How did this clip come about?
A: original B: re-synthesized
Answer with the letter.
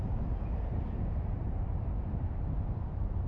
B